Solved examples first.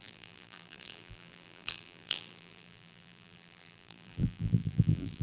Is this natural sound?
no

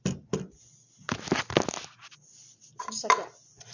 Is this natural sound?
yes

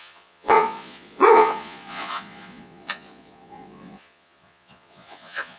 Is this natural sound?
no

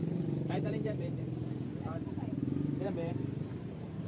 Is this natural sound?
no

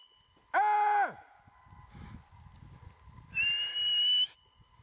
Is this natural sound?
yes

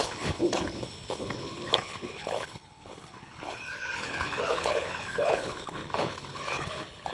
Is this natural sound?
no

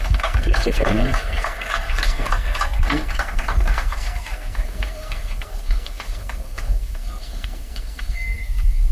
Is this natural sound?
no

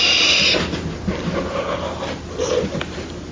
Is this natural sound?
yes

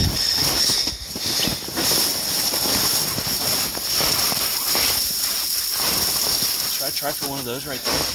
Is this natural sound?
yes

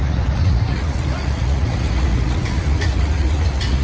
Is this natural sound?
no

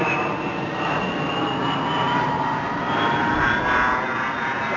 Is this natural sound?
yes